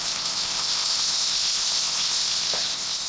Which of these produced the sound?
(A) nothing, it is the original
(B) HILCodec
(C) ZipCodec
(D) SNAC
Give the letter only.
C